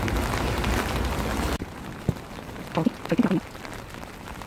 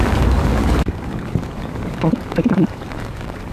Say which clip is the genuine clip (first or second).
first